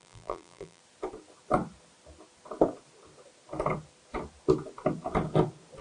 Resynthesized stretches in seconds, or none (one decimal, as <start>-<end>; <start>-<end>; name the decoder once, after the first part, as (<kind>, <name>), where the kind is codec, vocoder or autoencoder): 0.0-0.8 (vocoder, BigVGAN v2)